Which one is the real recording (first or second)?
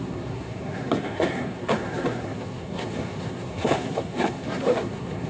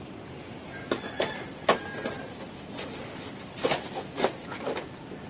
second